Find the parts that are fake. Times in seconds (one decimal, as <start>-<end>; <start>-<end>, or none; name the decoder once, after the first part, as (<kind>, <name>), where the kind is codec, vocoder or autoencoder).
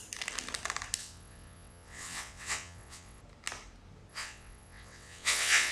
1.0-3.2 (vocoder, WaveNeXt); 4.1-5.7